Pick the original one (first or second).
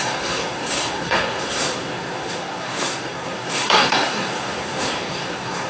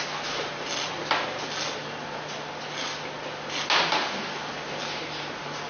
second